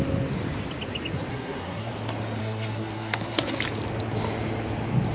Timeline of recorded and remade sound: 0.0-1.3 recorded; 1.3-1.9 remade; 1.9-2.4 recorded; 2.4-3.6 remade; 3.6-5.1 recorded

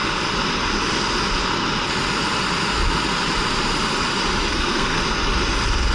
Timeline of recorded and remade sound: 0.0-4.5 recorded; 4.5-5.0 remade; 5.0-5.9 recorded